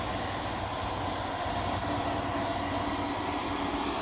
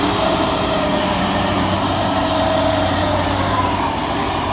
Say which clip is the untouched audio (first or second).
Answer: first